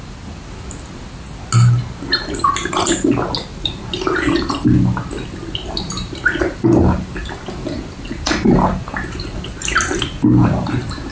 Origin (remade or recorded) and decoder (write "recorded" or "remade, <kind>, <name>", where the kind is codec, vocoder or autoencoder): recorded